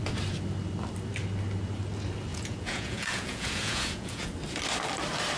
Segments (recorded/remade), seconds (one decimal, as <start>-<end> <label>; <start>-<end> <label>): 0.0-2.3 recorded; 2.3-4.3 remade; 4.3-5.4 recorded